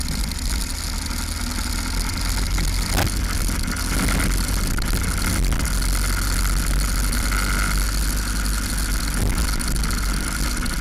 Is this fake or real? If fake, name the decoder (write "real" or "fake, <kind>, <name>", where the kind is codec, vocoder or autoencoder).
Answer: real